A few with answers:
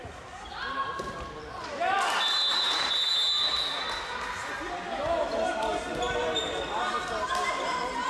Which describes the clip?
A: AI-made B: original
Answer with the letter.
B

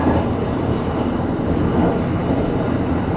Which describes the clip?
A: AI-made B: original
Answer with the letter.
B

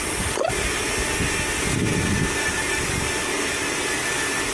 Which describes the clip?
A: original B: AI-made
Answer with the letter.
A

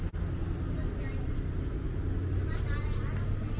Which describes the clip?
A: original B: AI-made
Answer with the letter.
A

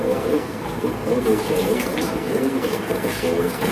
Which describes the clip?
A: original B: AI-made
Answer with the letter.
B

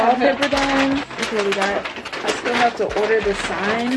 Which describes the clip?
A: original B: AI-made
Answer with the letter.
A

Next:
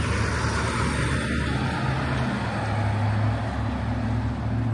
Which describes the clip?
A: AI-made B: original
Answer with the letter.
B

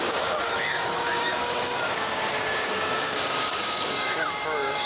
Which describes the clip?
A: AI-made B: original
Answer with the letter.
A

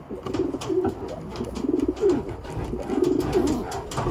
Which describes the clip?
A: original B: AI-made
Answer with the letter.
A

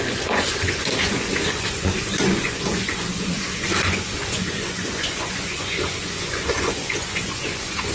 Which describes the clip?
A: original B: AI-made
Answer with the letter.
B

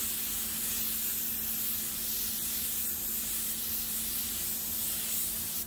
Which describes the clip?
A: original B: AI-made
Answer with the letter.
A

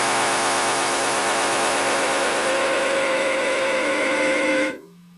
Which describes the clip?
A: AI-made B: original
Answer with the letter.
A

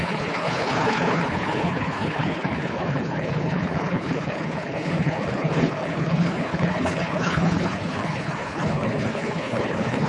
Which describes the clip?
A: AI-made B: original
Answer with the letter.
A